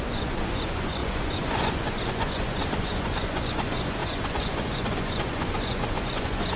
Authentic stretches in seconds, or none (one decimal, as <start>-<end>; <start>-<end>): none